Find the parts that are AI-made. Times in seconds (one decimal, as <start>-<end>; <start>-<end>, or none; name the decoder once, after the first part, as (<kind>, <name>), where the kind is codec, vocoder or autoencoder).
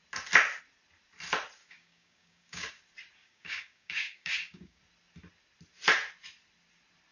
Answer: 1.6-2.8 (codec, DAC); 3.2-4.8